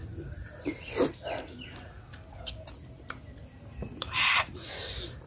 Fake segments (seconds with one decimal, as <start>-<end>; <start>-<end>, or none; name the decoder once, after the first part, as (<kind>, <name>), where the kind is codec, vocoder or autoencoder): 3.4-4.5 (vocoder, BigVGAN v2)